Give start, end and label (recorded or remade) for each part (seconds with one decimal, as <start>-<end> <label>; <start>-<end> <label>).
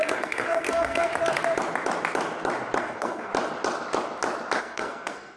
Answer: 0.0-1.1 remade; 1.1-2.8 recorded; 2.8-3.3 remade; 3.3-4.6 recorded; 4.6-5.4 remade